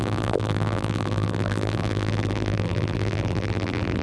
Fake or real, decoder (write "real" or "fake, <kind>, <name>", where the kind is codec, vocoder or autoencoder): fake, vocoder, BigVGAN v2